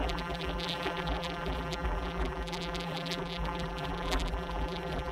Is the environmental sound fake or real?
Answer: fake